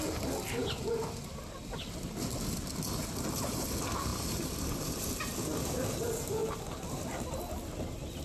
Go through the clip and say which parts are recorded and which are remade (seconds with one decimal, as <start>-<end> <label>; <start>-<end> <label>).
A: 0.0-8.2 recorded